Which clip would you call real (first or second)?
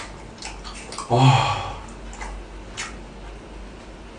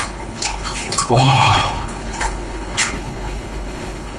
first